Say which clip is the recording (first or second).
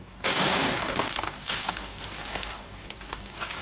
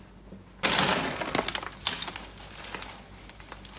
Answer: second